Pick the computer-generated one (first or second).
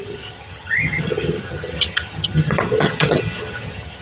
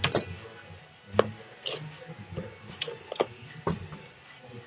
first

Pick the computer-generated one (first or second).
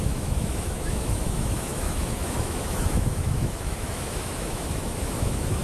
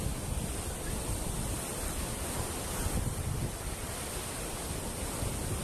first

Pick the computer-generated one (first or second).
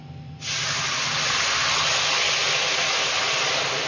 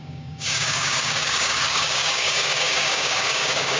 second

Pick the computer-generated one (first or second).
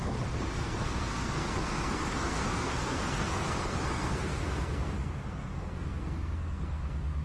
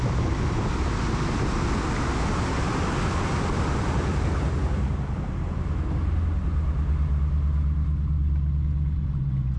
first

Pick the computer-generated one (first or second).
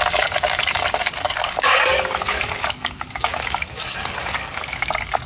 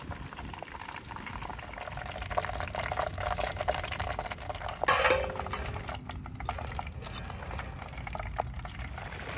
first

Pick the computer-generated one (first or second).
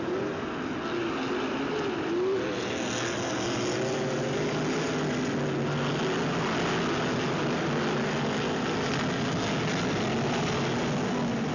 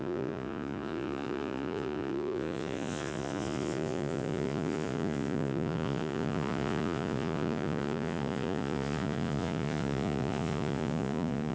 second